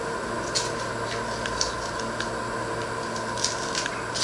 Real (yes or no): yes